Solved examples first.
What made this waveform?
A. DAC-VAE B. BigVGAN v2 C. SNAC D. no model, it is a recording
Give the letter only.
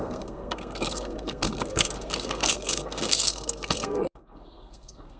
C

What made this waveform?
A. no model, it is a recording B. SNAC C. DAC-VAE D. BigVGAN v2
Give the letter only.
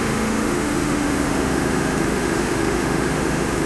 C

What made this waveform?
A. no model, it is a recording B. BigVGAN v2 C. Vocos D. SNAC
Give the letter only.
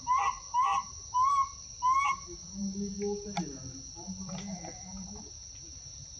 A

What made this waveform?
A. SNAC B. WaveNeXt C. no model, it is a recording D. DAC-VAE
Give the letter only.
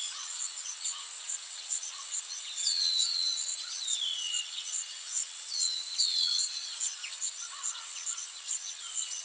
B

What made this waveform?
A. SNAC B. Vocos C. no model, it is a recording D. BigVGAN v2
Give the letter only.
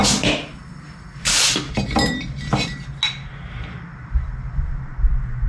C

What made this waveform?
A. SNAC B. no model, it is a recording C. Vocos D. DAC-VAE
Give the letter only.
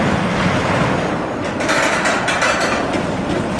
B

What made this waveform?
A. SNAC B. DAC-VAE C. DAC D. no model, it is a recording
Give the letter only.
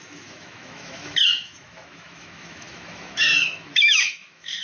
B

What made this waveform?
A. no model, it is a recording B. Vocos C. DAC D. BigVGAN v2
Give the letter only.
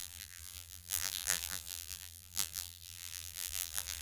D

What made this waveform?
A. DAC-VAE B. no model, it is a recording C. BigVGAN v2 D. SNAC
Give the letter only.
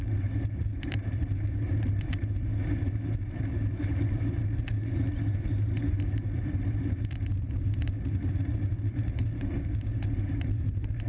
C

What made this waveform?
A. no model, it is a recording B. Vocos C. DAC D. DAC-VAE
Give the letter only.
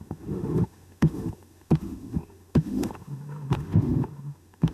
D